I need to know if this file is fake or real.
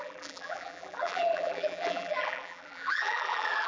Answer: fake